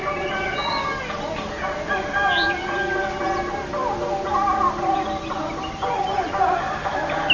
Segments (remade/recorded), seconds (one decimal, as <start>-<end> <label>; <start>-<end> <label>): 0.0-7.3 recorded